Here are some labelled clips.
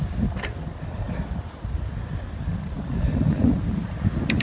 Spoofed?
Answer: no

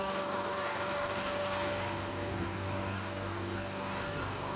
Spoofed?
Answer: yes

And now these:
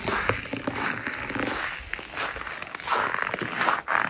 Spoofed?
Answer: no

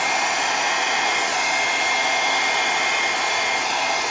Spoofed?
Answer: no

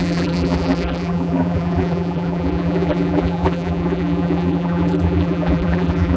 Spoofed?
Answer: yes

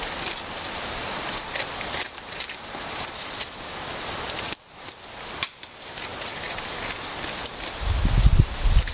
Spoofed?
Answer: no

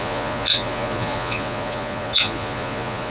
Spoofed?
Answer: yes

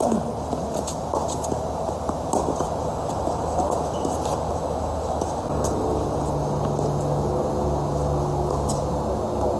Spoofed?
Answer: no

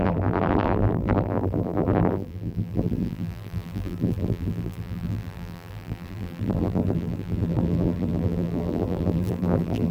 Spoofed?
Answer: yes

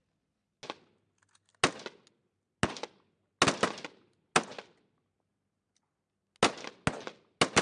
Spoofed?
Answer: no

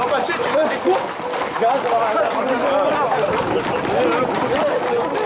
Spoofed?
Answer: no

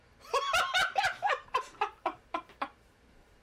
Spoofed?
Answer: yes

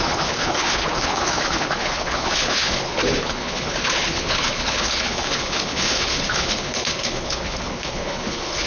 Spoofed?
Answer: yes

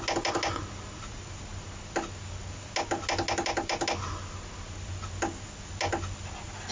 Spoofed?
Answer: no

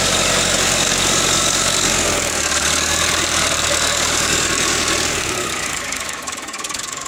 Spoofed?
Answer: yes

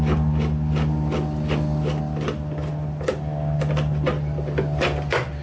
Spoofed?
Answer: no